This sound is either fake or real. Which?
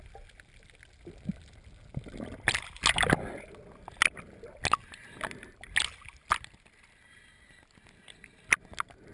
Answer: real